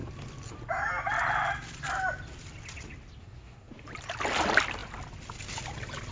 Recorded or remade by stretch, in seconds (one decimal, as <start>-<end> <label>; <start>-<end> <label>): 0.0-3.2 recorded; 3.2-3.7 remade; 3.7-6.1 recorded